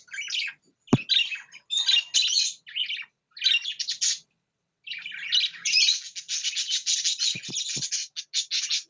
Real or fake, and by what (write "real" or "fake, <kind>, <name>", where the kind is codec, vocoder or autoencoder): real